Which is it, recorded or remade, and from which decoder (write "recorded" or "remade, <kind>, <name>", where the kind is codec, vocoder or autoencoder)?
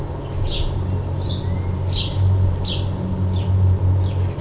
recorded